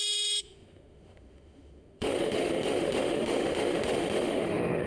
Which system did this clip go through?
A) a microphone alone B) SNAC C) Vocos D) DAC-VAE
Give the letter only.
D